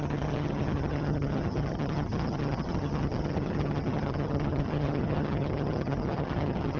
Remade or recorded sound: remade